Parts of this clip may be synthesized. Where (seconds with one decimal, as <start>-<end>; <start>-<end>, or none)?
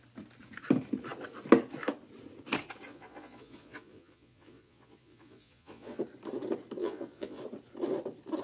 2.9-6.0; 6.8-7.4